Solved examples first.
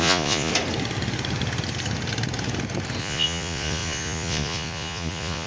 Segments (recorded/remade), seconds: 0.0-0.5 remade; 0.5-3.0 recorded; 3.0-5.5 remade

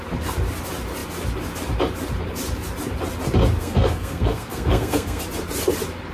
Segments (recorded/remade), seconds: 0.0-3.6 recorded; 3.6-5.2 remade; 5.2-6.1 recorded

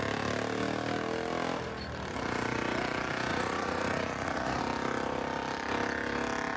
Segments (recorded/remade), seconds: 0.0-3.3 recorded; 3.3-4.6 remade; 4.6-6.6 recorded

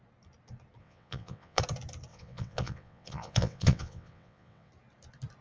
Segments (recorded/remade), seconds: 0.0-0.8 recorded; 0.8-1.6 remade; 1.6-2.1 recorded; 2.1-4.7 remade; 4.7-5.4 recorded

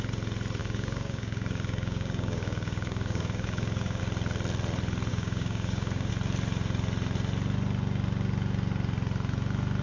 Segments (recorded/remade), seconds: 0.0-0.6 recorded; 0.6-4.0 remade; 4.0-5.1 recorded; 5.1-6.1 remade; 6.1-9.8 recorded

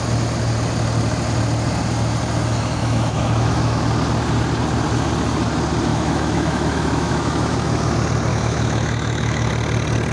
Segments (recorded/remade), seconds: 0.0-2.8 recorded; 2.8-3.8 remade; 3.8-5.9 recorded; 5.9-7.9 remade; 7.9-8.3 recorded; 8.3-9.5 remade; 9.5-10.1 recorded

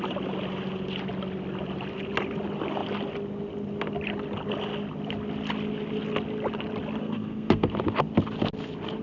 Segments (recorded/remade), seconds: 0.0-7.0 recorded; 7.0-7.7 remade; 7.7-9.0 recorded